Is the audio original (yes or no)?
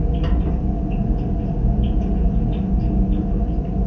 yes